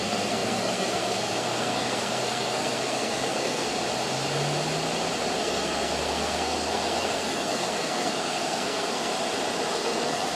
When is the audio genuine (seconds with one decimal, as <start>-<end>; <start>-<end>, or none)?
3.7-5.4; 9.1-9.7